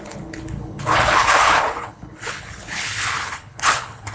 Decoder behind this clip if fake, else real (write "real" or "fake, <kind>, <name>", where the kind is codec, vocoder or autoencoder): fake, codec, HILCodec